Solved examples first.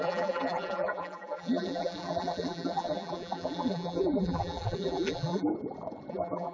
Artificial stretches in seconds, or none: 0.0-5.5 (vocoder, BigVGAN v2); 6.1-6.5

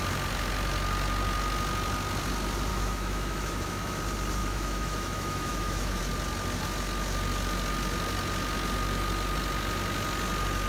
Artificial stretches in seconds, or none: 2.7-4.0 (autoencoder, DAC-VAE); 4.4-6.0

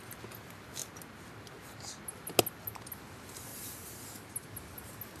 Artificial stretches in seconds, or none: 3.5-4.0 (vocoder, BigVGAN v2)

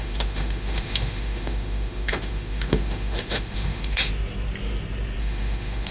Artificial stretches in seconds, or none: 0.0-4.1 (autoencoder, DAC-VAE); 5.2-5.9